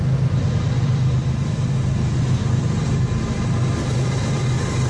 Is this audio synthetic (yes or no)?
yes